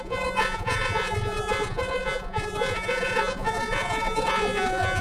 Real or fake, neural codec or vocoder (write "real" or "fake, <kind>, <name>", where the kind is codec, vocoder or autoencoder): fake, vocoder, Vocos